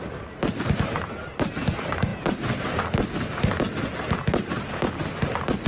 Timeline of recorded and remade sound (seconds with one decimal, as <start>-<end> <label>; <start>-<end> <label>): 0.0-5.7 recorded